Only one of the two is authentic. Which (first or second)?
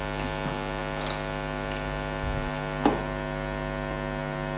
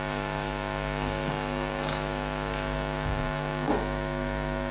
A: first